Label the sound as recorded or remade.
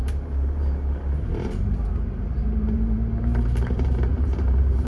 remade